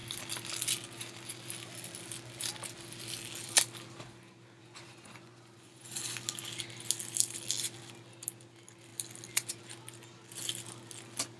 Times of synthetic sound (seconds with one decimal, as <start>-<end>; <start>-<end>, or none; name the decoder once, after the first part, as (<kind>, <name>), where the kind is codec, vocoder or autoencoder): 4.6-6.0 (vocoder, Vocos)